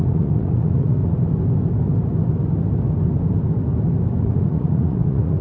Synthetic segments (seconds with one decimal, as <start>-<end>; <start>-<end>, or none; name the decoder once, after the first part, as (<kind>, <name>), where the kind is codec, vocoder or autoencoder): 0.0-1.0 (vocoder, Vocos); 4.2-5.4